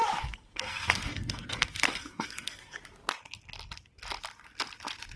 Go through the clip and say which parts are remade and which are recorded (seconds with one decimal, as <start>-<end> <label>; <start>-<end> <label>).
0.0-2.8 remade; 2.8-5.2 recorded